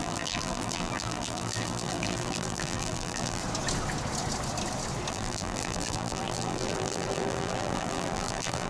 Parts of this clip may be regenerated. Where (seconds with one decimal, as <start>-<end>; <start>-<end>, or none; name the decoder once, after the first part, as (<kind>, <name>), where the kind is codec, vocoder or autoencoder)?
0.0-3.4 (vocoder, BigVGAN v2); 5.1-8.7